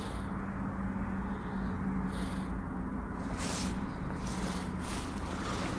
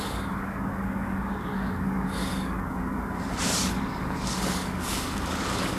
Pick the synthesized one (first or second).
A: second